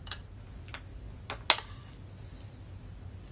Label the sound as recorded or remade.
recorded